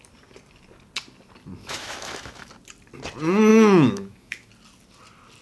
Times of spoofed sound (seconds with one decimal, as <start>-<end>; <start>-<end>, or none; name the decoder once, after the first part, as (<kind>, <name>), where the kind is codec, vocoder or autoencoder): 1.6-2.5 (autoencoder, DAC-VAE); 3.5-4.5